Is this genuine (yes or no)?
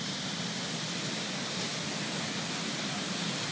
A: yes